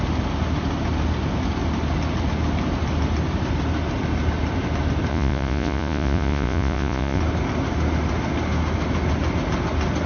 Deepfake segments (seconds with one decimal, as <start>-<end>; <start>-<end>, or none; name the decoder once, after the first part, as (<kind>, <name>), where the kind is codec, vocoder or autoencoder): 5.1-7.2 (vocoder, Vocos)